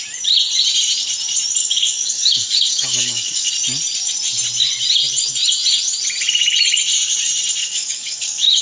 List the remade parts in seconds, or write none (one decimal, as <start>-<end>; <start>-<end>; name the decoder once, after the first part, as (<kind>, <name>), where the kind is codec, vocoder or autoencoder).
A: 1.6-3.5 (codec, DAC); 7.6-8.6